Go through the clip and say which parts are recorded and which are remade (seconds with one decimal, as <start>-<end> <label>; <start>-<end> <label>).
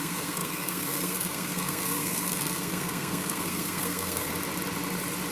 0.0-4.3 remade; 4.3-5.3 recorded